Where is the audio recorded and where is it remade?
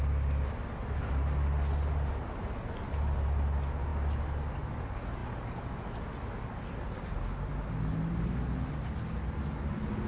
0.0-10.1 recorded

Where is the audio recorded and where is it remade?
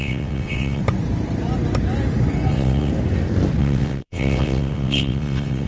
0.0-0.8 remade; 0.8-2.5 recorded; 2.5-2.9 remade; 2.9-3.6 recorded; 3.6-5.7 remade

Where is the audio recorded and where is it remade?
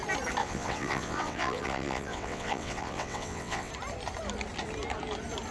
0.0-0.4 recorded; 0.4-3.7 remade; 3.7-5.5 recorded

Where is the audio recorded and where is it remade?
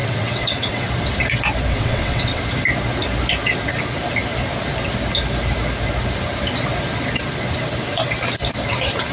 0.0-0.9 remade; 0.9-1.7 recorded; 1.7-2.4 remade; 2.4-9.1 recorded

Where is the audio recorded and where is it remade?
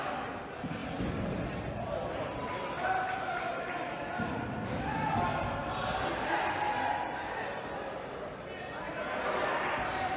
0.0-10.2 recorded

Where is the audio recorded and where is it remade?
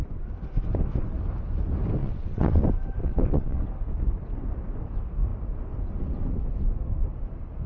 0.0-2.0 recorded; 2.0-2.6 remade; 2.6-3.0 recorded; 3.0-3.6 remade; 3.6-7.7 recorded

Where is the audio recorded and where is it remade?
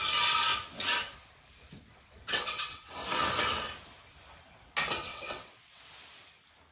0.0-1.9 recorded; 1.9-2.9 remade; 2.9-5.1 recorded; 5.1-5.8 remade; 5.8-6.7 recorded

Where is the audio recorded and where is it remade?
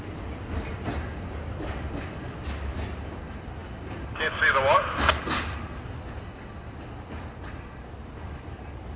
0.0-9.0 recorded